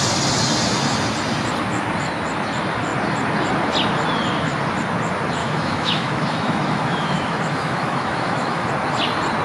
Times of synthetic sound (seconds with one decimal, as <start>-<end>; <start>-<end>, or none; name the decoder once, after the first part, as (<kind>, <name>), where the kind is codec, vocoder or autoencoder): 5.4-8.7 (autoencoder, DAC-VAE)